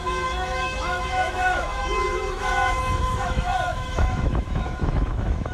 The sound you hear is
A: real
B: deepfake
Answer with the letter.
B